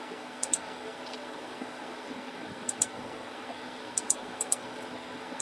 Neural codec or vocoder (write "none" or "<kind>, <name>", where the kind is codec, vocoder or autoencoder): codec, SNAC